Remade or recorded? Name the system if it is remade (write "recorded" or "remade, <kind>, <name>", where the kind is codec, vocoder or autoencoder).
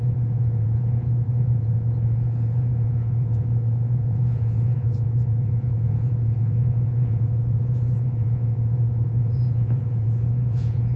remade, vocoder, Vocos